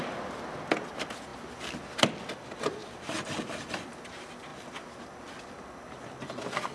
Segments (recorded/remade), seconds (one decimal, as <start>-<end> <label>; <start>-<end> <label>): 0.0-6.7 recorded